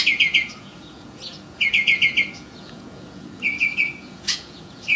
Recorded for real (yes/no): no